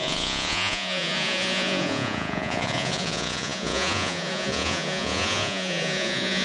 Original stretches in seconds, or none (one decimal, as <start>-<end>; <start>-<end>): none